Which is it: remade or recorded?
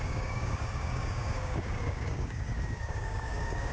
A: remade